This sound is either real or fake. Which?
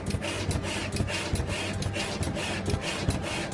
real